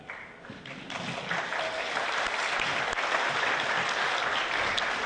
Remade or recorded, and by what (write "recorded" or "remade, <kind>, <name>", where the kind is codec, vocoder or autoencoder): recorded